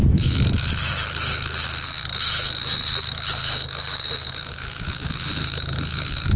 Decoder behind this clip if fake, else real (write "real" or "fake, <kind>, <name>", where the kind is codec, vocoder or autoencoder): fake, autoencoder, DAC-VAE